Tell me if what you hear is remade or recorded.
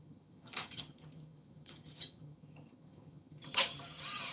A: remade